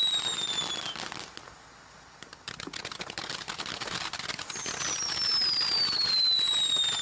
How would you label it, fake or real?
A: real